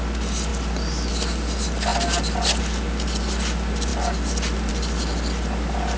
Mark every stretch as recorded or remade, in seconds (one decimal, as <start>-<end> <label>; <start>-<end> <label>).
0.0-6.0 recorded